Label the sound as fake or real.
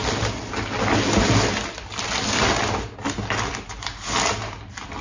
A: real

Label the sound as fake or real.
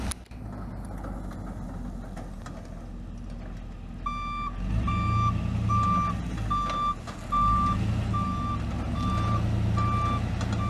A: real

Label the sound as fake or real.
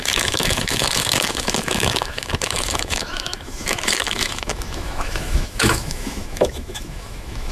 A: fake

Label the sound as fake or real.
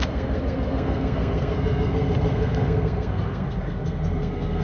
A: fake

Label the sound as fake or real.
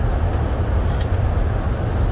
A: real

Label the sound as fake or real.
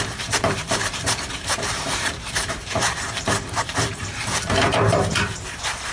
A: fake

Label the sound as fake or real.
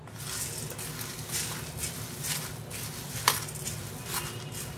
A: real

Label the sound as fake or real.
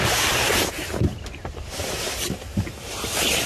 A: real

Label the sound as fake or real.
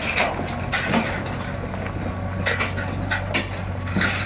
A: real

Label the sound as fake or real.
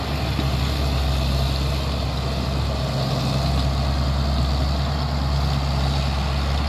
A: real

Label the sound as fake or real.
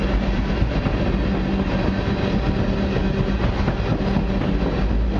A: real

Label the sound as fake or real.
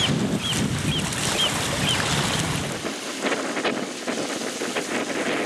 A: real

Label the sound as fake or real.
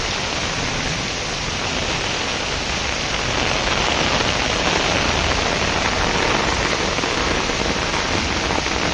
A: real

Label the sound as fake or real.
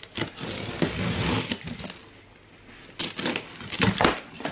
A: real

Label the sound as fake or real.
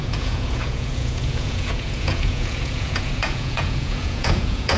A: fake